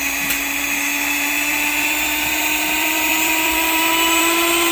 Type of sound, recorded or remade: remade